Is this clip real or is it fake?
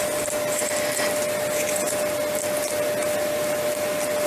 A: real